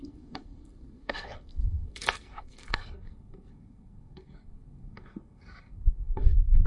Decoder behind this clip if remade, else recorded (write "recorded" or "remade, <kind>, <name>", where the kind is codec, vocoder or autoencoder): remade, codec, SNAC